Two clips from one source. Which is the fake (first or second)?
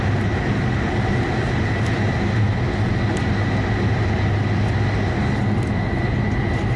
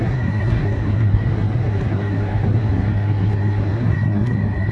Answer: second